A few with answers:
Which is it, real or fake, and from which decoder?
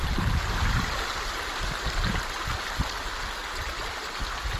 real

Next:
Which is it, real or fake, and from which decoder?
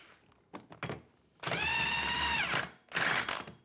real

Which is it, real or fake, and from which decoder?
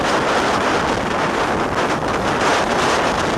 real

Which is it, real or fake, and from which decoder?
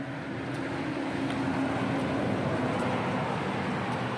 real